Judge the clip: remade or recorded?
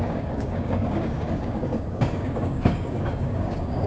remade